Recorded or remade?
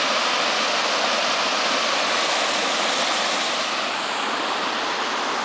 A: recorded